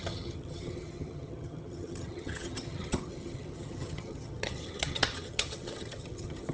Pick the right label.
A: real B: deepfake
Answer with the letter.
B